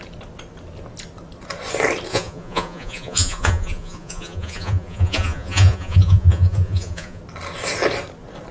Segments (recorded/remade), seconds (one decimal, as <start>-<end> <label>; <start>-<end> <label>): 0.0-2.1 recorded; 2.1-7.2 remade; 7.2-8.5 recorded

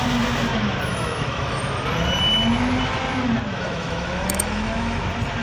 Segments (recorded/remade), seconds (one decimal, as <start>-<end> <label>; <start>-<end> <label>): 0.0-0.9 recorded; 0.9-1.6 remade; 1.6-3.5 recorded; 3.5-5.0 remade; 5.0-5.4 recorded

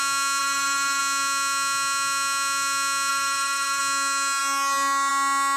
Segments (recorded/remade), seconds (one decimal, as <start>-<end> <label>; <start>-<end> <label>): 0.0-0.4 recorded; 0.4-1.0 remade; 1.0-3.1 recorded; 3.1-3.8 remade; 3.8-5.6 recorded

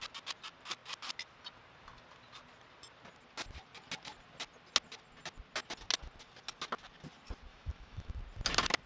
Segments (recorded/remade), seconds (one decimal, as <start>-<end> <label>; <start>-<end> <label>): 0.0-7.5 recorded; 7.5-8.1 remade; 8.1-8.9 recorded

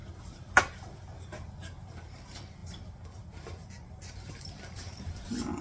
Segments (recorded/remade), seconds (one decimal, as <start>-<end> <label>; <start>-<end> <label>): 0.0-5.6 recorded